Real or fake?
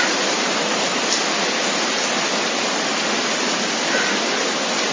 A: real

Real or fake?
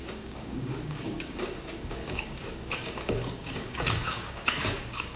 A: fake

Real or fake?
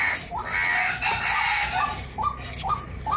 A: real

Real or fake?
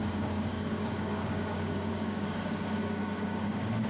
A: fake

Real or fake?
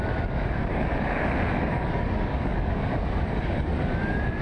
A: fake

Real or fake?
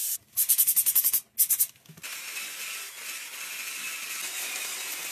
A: real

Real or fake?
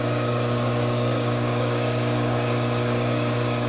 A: fake